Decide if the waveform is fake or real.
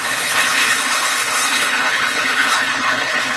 fake